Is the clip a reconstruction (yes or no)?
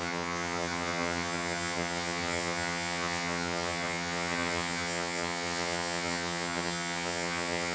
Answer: yes